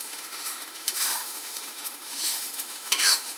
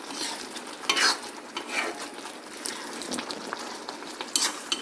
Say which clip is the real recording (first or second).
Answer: second